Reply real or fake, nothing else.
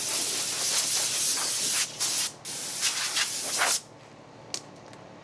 real